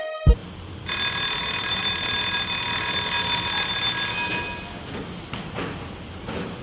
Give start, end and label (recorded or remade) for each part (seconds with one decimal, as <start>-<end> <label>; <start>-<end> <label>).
0.0-6.6 recorded